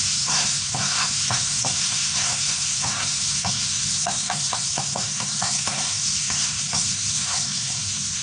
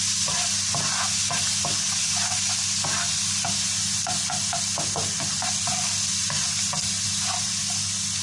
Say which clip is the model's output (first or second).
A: first